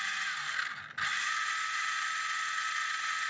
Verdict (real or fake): real